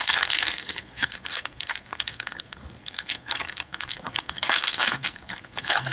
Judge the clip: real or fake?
fake